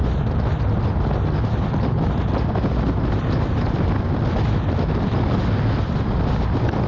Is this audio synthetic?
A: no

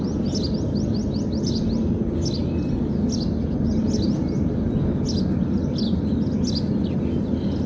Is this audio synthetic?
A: no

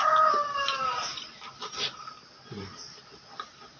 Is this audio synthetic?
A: no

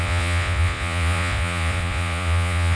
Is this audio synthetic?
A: yes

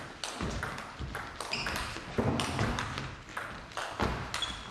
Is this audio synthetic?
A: no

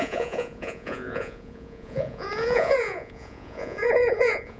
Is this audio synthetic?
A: yes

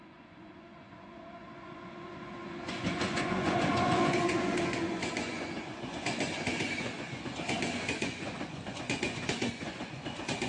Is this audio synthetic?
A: yes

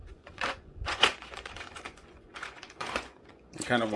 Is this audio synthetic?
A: yes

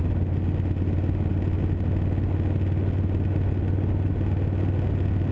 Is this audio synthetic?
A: no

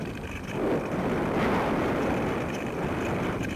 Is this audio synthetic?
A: no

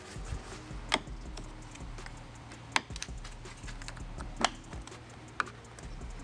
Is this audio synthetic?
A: no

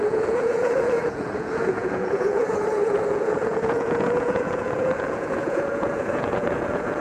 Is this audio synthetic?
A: yes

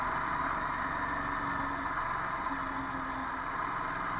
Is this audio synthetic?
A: no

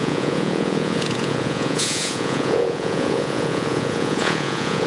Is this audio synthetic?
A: yes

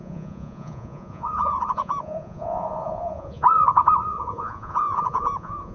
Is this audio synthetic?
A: yes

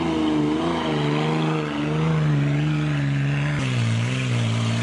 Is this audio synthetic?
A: no